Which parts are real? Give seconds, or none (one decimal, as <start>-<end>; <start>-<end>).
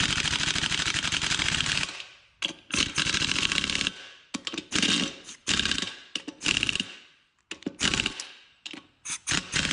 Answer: 0.0-9.7